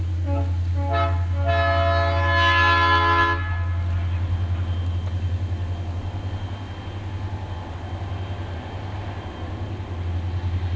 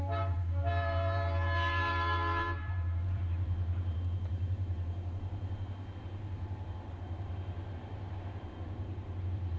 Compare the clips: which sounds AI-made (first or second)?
second